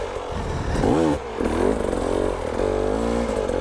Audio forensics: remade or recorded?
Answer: recorded